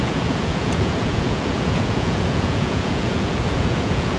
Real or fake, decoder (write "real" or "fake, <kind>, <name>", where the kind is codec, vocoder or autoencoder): fake, vocoder, Vocos